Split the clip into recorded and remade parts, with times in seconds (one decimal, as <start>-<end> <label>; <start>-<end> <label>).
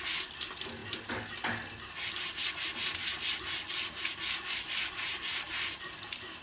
0.0-6.4 recorded